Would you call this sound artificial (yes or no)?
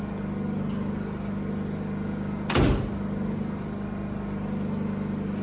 no